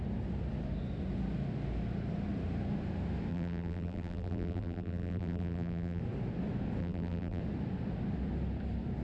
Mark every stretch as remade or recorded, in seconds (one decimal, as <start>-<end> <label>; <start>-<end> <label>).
0.0-3.3 recorded; 3.3-6.0 remade; 6.0-6.8 recorded; 6.8-7.4 remade; 7.4-9.0 recorded